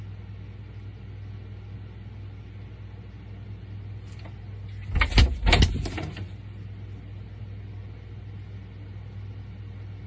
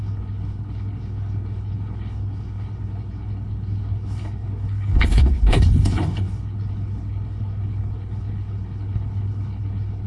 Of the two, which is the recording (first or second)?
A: first